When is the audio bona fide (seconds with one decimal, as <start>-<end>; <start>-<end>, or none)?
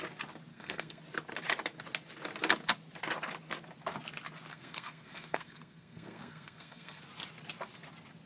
0.0-0.5; 1.0-4.5; 7.0-8.3